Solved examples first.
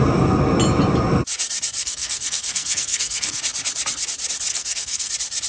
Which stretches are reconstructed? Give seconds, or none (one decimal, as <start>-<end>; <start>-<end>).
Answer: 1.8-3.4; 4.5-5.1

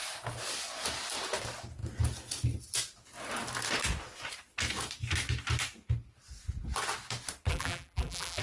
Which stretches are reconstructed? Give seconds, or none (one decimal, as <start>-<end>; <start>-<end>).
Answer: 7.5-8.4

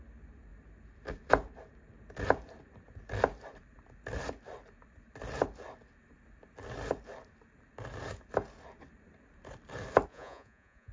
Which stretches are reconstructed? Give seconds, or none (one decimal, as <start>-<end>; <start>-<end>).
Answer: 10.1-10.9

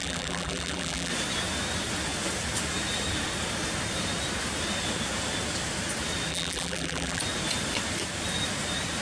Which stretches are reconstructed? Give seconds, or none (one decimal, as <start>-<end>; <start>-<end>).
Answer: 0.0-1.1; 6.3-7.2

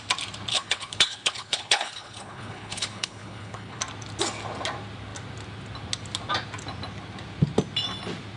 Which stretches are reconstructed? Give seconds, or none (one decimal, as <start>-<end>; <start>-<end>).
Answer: 0.5-3.8

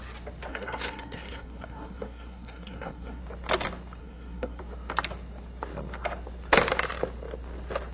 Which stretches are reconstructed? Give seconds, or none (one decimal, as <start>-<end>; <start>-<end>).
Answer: 0.5-3.2; 4.0-4.6

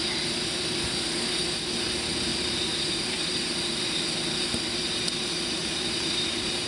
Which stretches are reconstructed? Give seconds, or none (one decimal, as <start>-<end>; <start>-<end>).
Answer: 2.3-3.8; 5.6-6.7

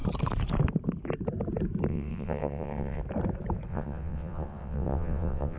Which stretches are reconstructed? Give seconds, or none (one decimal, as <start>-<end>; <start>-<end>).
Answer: 1.9-3.0; 3.7-5.6